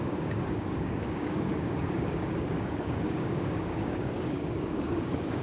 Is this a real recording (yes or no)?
no